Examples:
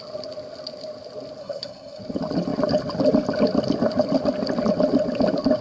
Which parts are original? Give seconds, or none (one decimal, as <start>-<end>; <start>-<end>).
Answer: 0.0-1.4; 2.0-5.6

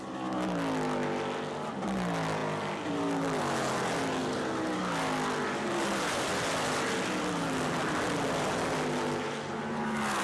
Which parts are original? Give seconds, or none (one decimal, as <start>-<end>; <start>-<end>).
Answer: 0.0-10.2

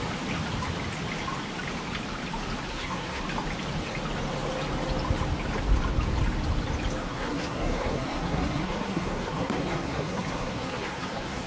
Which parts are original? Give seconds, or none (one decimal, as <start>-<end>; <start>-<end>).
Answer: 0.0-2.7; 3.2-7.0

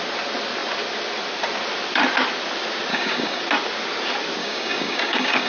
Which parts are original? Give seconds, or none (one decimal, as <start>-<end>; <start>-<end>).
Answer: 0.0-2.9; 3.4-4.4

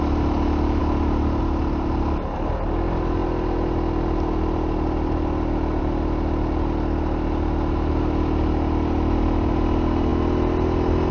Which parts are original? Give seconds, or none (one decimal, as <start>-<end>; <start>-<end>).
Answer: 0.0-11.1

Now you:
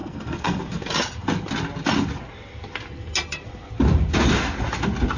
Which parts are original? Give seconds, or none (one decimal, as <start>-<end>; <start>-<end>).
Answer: 0.6-5.2